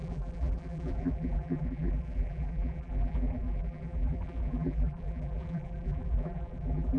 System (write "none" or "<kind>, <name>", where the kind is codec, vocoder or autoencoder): vocoder, BigVGAN v2